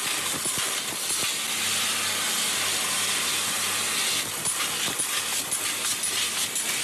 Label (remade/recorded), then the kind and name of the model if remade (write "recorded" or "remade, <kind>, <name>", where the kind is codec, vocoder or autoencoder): recorded